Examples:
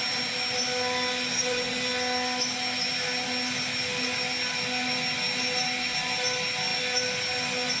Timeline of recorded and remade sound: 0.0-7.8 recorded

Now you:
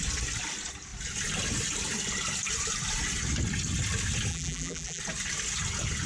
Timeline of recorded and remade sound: 0.0-4.3 recorded; 4.3-5.0 remade; 5.0-6.1 recorded

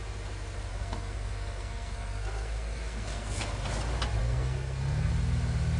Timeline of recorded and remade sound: 0.0-0.7 recorded; 0.7-3.5 remade; 3.5-4.2 recorded; 4.2-5.1 remade; 5.1-5.8 recorded

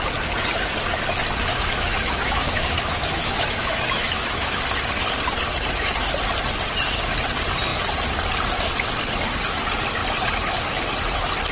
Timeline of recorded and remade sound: 0.0-1.5 recorded; 1.5-4.6 remade; 4.6-11.5 recorded